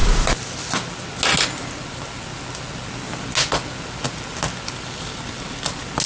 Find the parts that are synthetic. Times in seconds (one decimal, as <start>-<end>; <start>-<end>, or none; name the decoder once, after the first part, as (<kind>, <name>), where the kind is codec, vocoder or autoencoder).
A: none